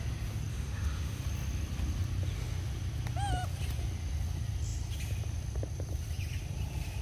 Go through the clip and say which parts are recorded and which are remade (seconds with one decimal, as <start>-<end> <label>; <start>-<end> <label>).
0.0-0.5 recorded; 0.5-1.2 remade; 1.2-7.0 recorded